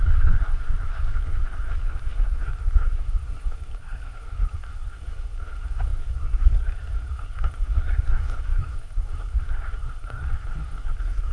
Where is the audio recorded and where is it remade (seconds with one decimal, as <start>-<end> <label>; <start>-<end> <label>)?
0.0-11.3 remade